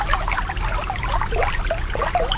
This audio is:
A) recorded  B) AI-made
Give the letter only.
A